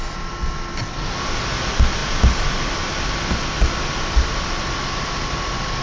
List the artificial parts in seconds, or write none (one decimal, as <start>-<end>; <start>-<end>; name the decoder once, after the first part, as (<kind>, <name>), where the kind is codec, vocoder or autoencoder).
none